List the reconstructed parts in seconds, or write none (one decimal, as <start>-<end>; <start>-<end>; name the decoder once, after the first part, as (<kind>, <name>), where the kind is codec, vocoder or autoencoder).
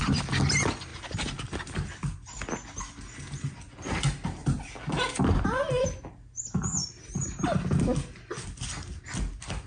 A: none